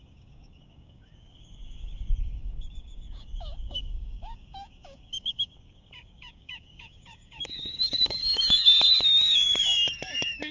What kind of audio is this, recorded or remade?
remade